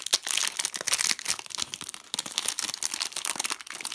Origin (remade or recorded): recorded